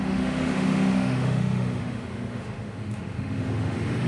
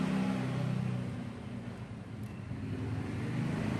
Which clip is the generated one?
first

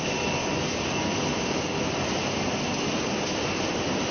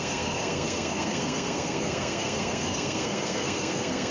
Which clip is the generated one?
second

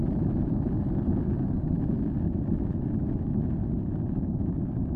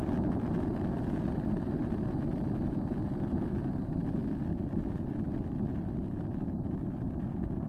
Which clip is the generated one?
second